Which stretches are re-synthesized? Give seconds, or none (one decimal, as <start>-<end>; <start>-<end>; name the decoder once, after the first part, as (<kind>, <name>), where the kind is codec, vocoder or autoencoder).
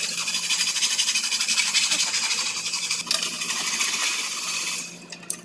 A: none